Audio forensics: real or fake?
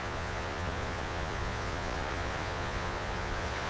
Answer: fake